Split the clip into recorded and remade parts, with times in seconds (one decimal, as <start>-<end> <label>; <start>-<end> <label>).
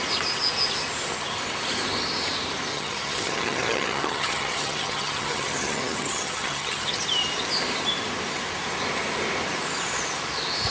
0.0-2.7 recorded; 2.7-7.0 remade; 7.0-10.7 recorded